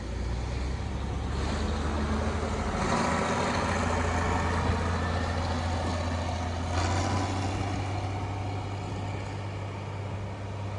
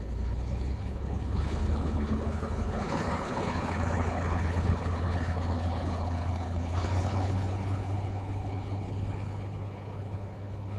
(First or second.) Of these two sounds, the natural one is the first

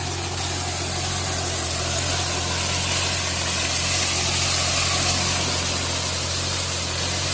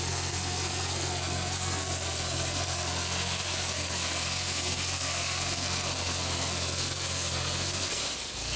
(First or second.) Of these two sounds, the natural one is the first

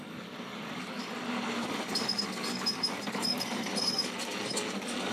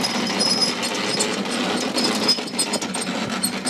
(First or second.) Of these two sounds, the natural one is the second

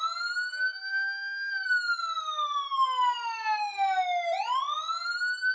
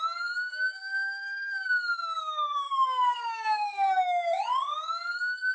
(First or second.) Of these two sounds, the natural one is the first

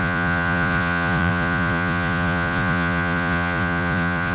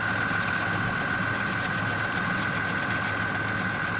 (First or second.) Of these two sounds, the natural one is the second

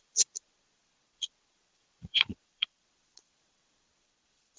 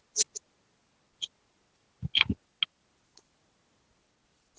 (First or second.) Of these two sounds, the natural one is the second